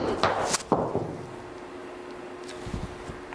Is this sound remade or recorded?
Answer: recorded